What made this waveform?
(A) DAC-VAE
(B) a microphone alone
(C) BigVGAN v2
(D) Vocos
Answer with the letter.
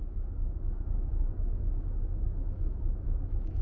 A